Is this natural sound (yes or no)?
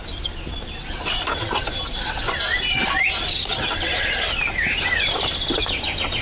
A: yes